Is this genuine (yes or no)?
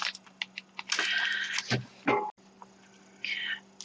yes